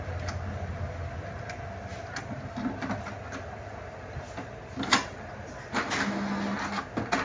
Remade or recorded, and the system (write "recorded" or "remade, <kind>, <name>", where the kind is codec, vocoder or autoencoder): recorded